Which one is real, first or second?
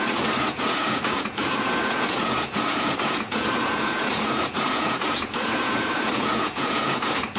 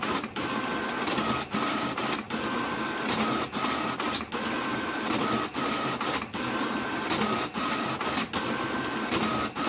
second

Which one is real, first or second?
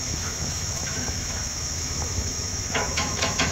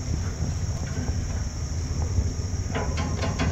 second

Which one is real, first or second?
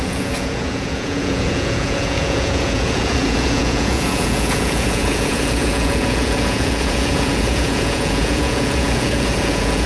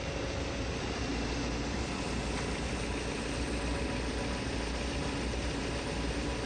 second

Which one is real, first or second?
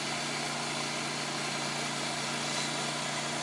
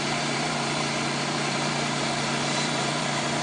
first